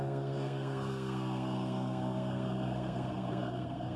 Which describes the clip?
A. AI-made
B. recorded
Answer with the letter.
A